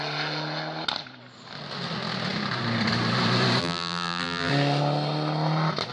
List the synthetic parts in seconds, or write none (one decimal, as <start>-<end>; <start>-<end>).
3.6-4.5